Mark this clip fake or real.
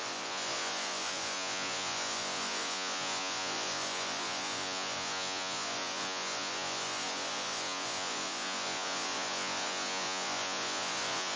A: fake